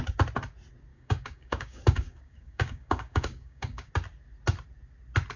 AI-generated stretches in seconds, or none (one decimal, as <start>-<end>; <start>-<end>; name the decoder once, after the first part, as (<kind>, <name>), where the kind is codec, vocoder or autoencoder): 0.9-3.9 (codec, DAC)